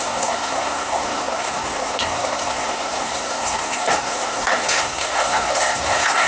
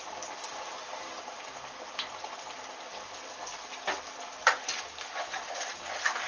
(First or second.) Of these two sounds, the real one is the second